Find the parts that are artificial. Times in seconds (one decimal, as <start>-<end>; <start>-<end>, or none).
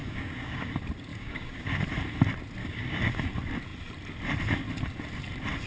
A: 0.0-0.7; 1.1-1.8; 2.6-3.1